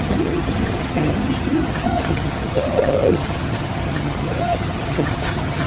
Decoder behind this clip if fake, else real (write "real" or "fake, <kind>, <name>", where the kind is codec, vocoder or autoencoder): fake, vocoder, HiFi-GAN